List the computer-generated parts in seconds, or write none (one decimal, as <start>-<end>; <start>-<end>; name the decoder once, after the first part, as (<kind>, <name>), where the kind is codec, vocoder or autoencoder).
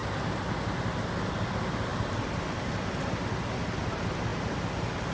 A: 1.9-3.5 (vocoder, BigVGAN v2)